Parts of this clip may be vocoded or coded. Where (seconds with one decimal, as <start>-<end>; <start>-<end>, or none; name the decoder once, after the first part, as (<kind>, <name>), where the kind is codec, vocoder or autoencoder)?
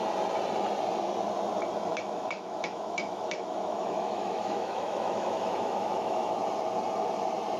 1.9-6.4 (autoencoder, DAC-VAE)